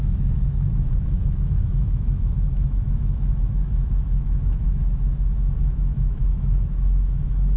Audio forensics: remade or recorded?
remade